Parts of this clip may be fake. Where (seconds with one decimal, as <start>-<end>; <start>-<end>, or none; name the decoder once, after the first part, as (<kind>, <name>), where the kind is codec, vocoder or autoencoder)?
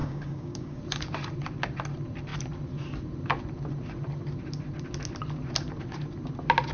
0.0-0.8 (codec, DAC)